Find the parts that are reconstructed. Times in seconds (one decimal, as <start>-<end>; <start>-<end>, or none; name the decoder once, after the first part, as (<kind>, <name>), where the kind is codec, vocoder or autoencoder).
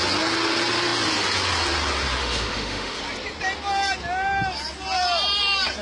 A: 2.2-3.0 (autoencoder, DAC-VAE)